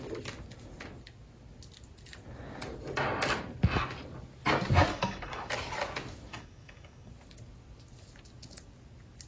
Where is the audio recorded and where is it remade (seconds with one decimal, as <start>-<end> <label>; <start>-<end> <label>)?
0.0-4.9 recorded; 4.9-5.5 remade; 5.5-6.3 recorded; 6.3-7.1 remade; 7.1-9.3 recorded